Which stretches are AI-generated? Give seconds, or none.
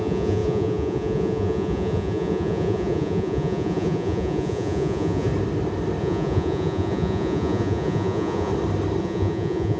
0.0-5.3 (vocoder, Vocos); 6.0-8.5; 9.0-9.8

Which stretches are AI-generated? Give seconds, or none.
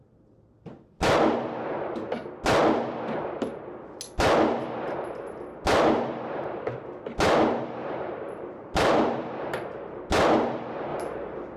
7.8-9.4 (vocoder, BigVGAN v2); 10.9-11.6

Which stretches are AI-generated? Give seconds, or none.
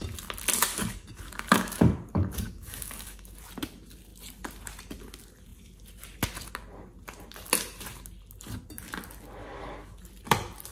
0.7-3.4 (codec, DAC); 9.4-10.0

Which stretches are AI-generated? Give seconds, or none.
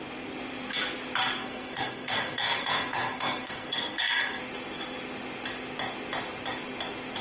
1.4-4.4 (codec, SNAC)